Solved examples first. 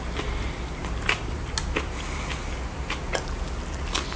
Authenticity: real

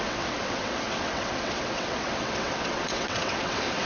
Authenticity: fake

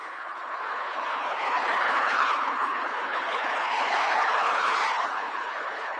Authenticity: fake